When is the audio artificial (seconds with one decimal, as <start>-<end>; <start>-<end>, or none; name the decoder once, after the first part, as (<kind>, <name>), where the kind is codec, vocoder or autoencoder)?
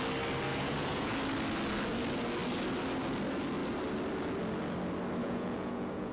0.5-1.1 (vocoder, Vocos); 5.2-6.1